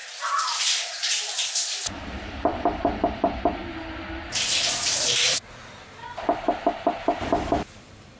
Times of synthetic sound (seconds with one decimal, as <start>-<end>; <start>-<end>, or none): 1.1-3.6; 6.5-8.2